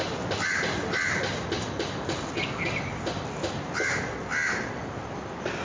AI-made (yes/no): no